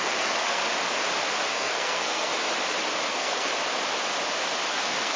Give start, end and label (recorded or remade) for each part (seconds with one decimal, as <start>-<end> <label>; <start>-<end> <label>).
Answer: 0.0-0.6 remade; 0.6-1.5 recorded; 1.5-2.3 remade; 2.3-3.1 recorded; 3.1-3.5 remade; 3.5-4.7 recorded; 4.7-5.2 remade